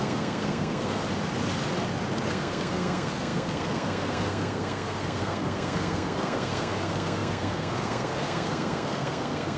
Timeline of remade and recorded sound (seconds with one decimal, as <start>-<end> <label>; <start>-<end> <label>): 0.0-1.0 remade; 1.0-2.3 recorded; 2.3-9.6 remade